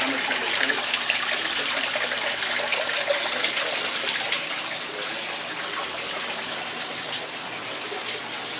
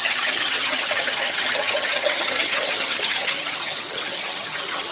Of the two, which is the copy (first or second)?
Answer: second